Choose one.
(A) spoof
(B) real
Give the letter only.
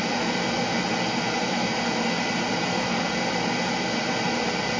B